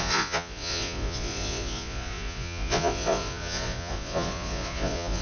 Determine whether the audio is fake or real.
fake